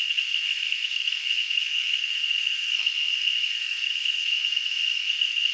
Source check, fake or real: fake